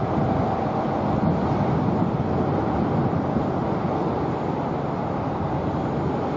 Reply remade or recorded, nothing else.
recorded